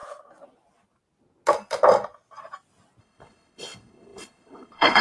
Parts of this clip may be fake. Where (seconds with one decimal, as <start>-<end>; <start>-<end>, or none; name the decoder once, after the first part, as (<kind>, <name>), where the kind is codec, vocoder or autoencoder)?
3.0-5.0 (codec, HILCodec)